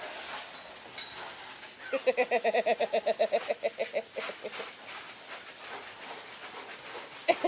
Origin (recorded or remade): recorded